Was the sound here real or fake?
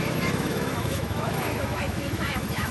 fake